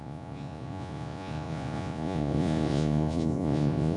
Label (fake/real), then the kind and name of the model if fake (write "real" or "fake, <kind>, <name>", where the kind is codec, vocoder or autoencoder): fake, vocoder, Vocos